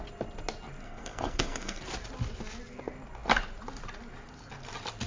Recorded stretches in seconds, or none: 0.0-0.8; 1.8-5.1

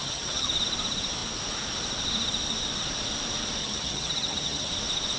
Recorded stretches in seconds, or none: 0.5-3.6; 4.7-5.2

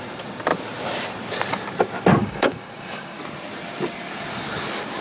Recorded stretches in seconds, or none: 0.0-2.2; 3.2-5.0